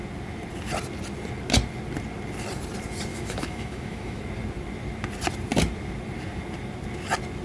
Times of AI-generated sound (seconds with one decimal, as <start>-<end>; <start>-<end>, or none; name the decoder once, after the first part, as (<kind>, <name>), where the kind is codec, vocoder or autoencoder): 3.1-4.2 (autoencoder, DAC-VAE)

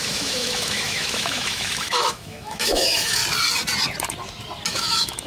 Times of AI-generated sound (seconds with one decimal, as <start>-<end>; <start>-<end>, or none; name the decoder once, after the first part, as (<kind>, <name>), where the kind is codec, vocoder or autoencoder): 0.0-3.2 (autoencoder, DAC-VAE); 4.7-5.3

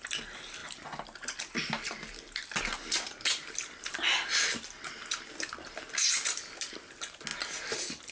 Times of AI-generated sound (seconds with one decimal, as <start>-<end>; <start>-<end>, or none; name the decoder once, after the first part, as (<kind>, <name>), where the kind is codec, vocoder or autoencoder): none

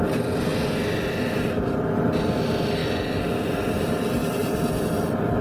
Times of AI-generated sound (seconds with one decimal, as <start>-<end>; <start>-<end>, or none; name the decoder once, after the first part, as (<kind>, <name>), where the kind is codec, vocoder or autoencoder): none

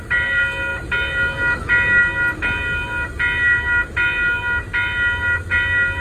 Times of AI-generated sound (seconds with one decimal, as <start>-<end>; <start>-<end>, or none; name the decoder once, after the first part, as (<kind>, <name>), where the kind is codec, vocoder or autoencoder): none

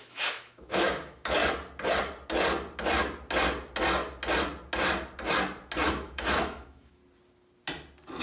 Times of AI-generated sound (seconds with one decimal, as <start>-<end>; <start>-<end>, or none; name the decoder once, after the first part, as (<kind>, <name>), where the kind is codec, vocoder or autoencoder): 0.0-1.4 (autoencoder, DAC-VAE); 5.9-7.0

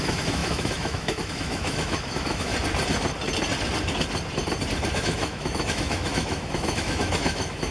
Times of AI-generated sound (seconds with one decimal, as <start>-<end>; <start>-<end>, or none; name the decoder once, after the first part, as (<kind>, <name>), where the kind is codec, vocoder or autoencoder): 0.0-2.5 (autoencoder, DAC-VAE); 4.9-7.7